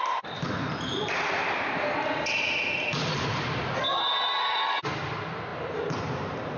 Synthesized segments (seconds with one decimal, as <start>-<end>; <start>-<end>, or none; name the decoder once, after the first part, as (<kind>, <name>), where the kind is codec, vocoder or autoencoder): none